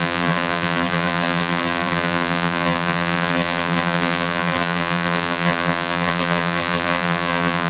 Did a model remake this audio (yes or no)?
yes